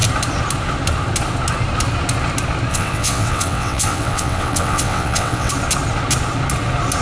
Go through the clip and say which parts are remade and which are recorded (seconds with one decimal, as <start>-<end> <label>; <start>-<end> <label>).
0.0-2.7 recorded; 2.7-5.5 remade; 5.5-7.0 recorded